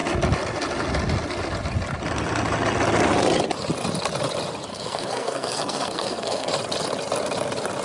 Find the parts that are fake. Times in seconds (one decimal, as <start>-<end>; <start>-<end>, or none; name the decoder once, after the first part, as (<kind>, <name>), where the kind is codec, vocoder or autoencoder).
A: 4.7-6.5 (codec, SNAC)